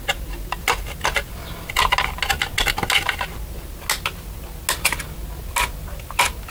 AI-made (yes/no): no